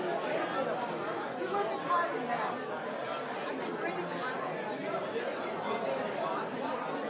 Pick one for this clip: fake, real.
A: real